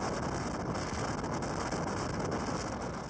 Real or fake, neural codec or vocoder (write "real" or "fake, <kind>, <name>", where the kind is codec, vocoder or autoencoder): real